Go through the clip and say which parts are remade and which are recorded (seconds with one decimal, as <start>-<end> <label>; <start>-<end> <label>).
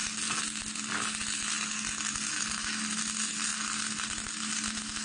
0.0-5.0 recorded